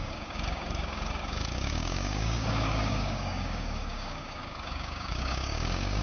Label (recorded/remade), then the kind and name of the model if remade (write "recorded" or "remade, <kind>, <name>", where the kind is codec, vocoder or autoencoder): remade, codec, DAC